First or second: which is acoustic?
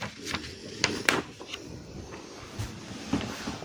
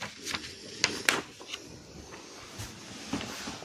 second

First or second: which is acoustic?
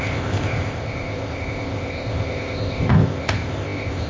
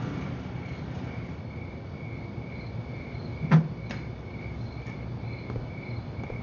second